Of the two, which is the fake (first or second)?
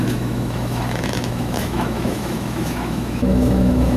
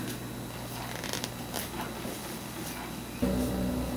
first